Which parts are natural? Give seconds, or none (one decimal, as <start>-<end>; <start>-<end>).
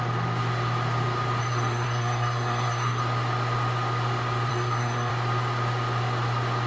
0.0-1.4; 3.0-4.5; 5.1-6.7